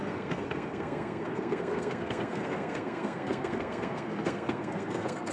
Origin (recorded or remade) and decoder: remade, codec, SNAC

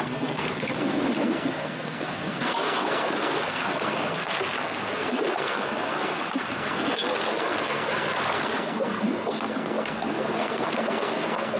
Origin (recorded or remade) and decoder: remade, codec, SNAC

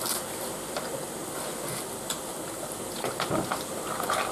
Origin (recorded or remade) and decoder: recorded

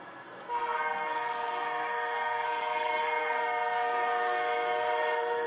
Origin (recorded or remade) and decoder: remade, codec, SNAC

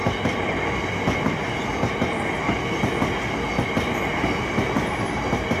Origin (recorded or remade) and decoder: recorded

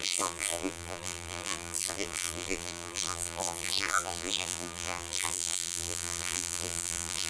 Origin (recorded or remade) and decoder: remade, vocoder, BigVGAN v2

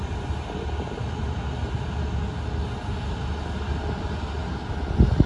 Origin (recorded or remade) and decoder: recorded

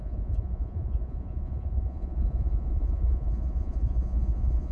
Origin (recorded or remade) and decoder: remade, vocoder, Vocos